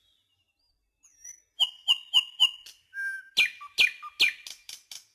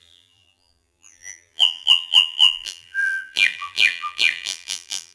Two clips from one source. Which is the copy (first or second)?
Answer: second